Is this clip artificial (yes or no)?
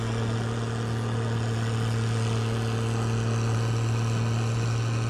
no